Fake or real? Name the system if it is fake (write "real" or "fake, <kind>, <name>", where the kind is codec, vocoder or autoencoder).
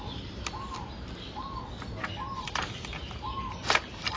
real